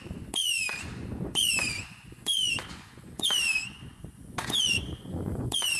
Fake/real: fake